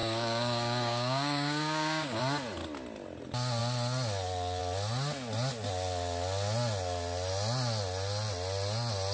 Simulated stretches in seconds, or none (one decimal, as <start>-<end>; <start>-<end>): 0.0-2.2